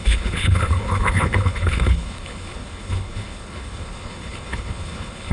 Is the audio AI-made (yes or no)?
yes